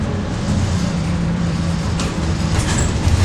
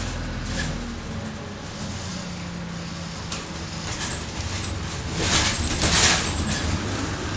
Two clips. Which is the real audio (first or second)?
second